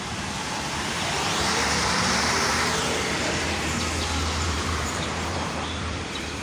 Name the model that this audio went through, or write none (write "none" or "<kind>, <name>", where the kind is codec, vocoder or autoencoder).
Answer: vocoder, BigVGAN v2